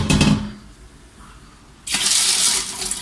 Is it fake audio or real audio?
real